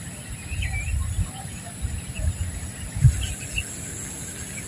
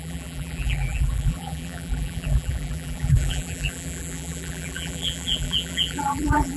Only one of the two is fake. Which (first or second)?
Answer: second